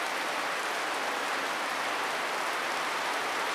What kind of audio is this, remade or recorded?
recorded